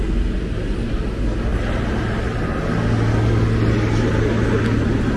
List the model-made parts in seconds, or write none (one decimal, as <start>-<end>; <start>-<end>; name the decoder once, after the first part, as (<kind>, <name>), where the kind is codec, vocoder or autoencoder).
none